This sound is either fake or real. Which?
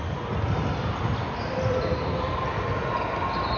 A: real